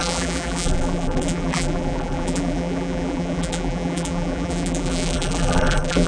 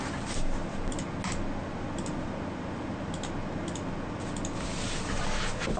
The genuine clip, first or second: second